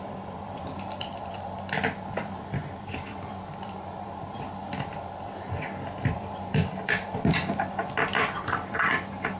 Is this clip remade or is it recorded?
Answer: remade